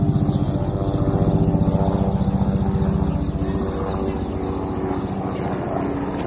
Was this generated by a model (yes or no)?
no